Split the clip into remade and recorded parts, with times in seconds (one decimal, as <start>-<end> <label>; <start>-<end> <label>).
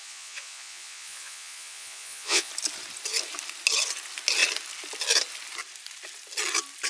0.0-2.5 remade; 2.5-6.9 recorded